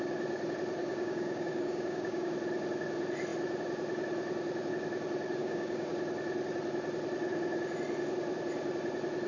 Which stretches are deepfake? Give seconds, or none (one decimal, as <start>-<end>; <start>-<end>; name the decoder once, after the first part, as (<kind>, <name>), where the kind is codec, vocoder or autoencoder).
0.8-2.3 (codec, DAC); 5.4-6.0